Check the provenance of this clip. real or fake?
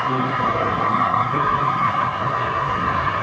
fake